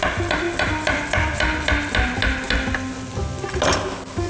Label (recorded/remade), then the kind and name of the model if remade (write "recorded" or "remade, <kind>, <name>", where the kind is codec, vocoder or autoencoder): recorded